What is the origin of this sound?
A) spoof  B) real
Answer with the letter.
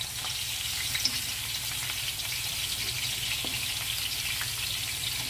B